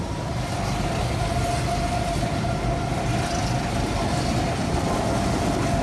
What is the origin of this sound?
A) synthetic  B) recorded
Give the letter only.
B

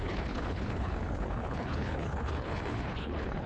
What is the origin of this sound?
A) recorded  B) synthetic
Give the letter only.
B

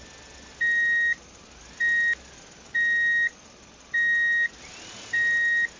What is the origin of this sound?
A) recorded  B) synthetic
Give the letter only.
A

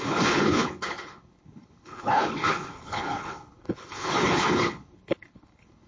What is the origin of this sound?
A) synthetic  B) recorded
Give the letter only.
A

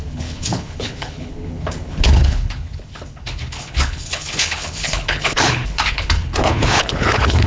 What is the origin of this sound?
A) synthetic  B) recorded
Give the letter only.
A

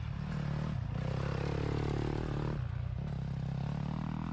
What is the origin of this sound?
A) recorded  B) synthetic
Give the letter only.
A